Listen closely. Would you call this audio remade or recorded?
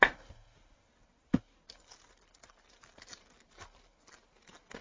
recorded